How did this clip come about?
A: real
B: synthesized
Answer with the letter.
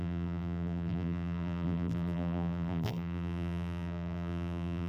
B